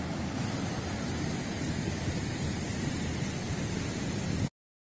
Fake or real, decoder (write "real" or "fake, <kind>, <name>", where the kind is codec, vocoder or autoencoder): real